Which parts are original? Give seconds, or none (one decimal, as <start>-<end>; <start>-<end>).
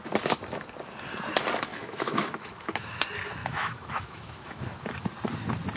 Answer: 0.0-1.7; 3.0-3.4; 4.6-5.8